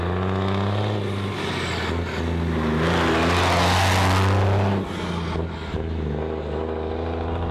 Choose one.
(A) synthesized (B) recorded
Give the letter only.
B